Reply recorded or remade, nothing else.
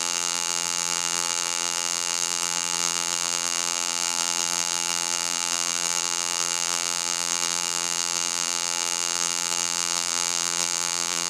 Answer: remade